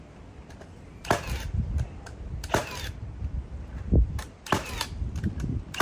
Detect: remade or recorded recorded